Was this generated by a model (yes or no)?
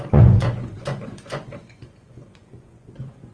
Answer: yes